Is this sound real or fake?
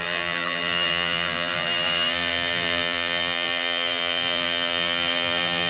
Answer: fake